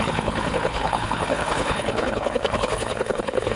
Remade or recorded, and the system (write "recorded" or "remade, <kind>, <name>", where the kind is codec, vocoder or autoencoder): remade, codec, HILCodec